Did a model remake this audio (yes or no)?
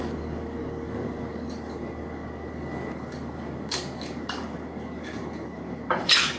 yes